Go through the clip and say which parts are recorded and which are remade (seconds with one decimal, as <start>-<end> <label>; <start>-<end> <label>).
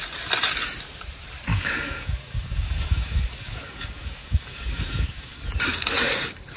0.0-1.5 recorded; 1.5-5.4 remade; 5.4-6.6 recorded